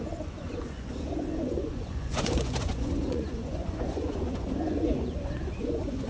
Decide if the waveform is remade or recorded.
remade